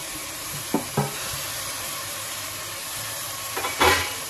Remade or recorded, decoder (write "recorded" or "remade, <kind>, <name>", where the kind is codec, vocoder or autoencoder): remade, vocoder, BigVGAN v2